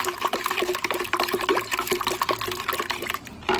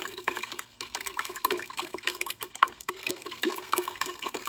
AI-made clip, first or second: second